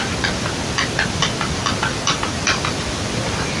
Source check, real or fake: real